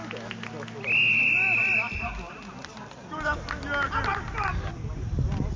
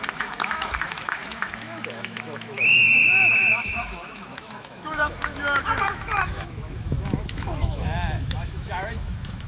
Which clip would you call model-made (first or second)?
second